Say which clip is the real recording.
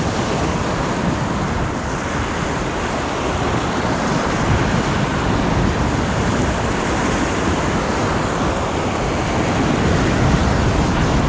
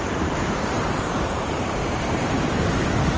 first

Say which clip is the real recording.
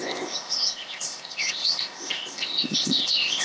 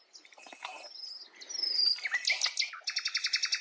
second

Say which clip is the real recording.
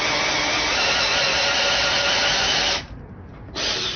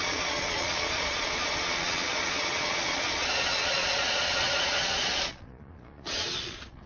first